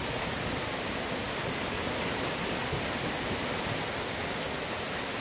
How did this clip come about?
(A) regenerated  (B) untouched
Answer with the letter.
B